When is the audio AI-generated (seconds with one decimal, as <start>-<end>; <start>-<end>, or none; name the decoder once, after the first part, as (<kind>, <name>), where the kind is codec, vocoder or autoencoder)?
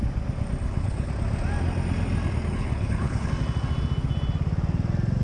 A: 0.6-1.1 (codec, HILCodec); 2.5-3.3